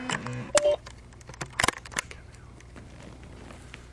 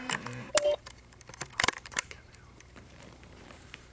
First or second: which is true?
first